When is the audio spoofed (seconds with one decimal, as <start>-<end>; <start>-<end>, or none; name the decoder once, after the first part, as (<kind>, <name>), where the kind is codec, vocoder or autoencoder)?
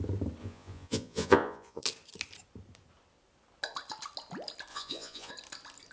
0.4-1.8 (vocoder, Vocos); 4.7-5.3